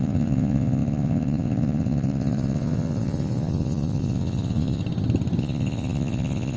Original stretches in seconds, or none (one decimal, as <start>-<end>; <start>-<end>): 4.8-5.4